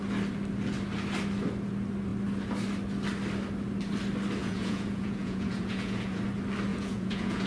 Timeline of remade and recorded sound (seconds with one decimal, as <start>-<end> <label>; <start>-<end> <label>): 0.0-4.4 recorded; 4.4-6.2 remade; 6.2-6.7 recorded; 6.7-7.5 remade